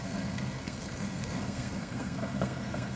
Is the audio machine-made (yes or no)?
yes